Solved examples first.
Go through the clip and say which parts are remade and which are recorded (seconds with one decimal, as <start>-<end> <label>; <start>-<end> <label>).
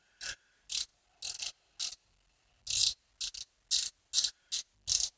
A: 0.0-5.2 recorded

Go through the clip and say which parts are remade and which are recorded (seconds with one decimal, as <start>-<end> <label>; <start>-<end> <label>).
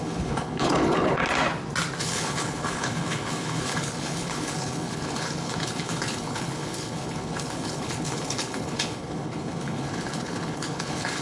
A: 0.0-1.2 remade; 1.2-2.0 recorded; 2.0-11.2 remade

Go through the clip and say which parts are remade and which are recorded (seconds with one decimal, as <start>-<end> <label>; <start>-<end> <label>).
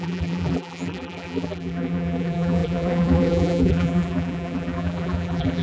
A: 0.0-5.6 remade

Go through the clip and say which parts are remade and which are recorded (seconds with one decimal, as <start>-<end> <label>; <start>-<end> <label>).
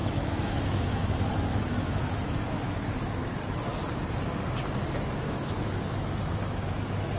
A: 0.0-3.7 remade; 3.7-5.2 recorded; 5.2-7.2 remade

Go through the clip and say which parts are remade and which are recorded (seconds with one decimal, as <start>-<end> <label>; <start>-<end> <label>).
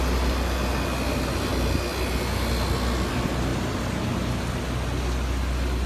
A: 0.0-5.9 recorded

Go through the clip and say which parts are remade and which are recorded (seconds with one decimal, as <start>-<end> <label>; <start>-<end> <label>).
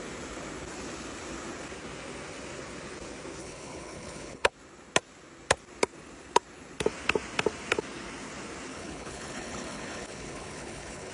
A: 0.0-3.4 recorded; 3.4-4.5 remade; 4.5-8.7 recorded; 8.7-11.1 remade